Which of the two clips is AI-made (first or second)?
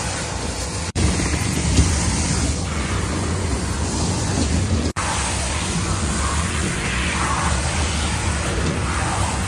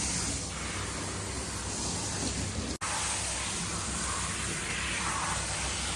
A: first